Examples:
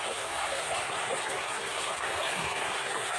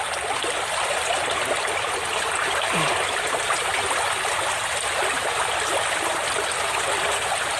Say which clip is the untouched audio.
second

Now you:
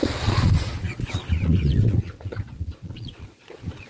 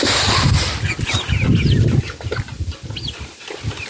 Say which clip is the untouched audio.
second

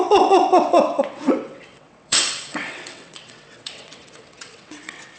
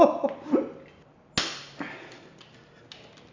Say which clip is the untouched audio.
second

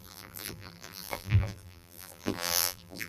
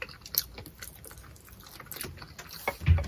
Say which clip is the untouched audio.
second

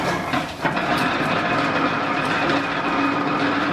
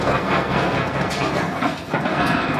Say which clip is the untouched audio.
first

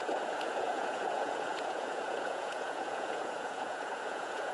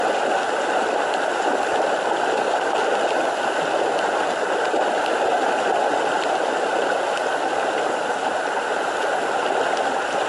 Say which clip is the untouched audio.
second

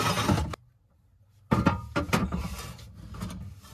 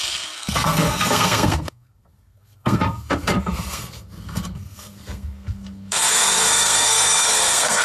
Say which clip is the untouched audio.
first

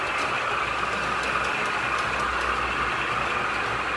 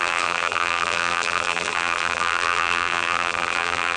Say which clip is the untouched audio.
first